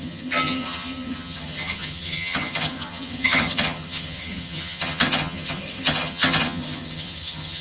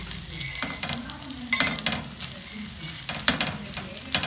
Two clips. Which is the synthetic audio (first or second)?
first